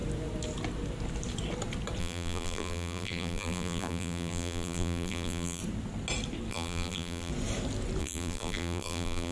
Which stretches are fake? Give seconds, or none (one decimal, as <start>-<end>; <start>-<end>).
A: 2.0-5.6; 6.5-7.3; 8.0-9.3